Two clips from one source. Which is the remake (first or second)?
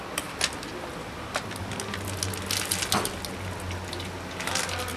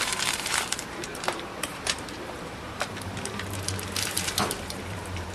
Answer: second